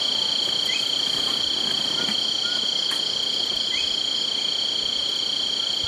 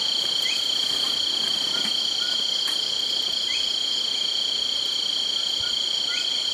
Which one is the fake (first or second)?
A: second